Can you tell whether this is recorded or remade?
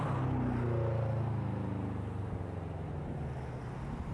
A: recorded